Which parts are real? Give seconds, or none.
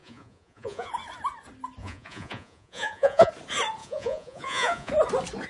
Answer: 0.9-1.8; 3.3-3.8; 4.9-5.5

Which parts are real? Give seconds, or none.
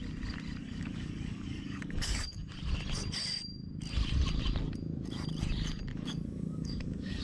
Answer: 0.0-0.6; 2.4-5.9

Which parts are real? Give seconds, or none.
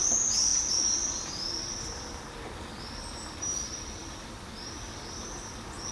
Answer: 0.0-0.5; 1.6-4.0; 4.7-5.9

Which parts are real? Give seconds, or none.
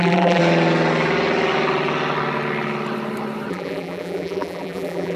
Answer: 0.4-3.5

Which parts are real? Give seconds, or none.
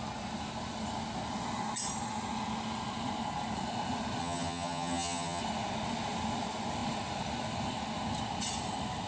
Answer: 0.0-4.2; 5.4-9.1